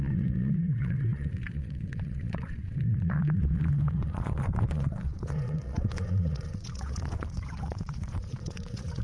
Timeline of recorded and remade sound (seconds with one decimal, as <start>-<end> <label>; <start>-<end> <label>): 0.0-9.0 remade